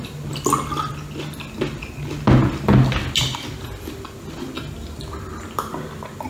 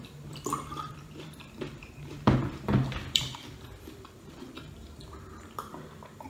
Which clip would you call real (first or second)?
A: first